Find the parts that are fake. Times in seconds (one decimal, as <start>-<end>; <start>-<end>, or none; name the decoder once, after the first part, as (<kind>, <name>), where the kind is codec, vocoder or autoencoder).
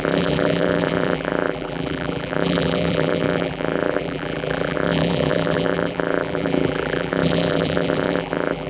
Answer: 0.0-8.7 (vocoder, BigVGAN v2)